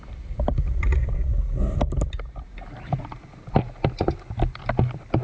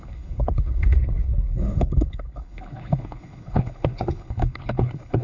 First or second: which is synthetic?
second